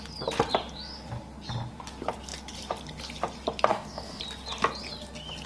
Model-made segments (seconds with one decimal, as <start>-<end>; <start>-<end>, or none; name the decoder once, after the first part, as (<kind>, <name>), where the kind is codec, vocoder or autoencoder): 3.7-4.2 (codec, DAC)